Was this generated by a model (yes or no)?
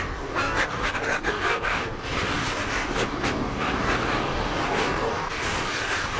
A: yes